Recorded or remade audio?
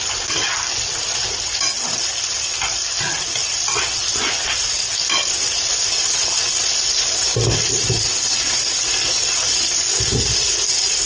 recorded